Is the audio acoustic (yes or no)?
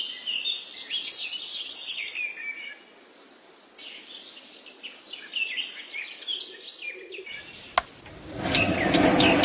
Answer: yes